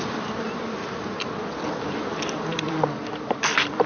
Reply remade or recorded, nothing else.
recorded